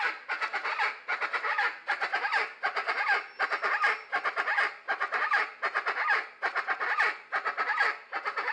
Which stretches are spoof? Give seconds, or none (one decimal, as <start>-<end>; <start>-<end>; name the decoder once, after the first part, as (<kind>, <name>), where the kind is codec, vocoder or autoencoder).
none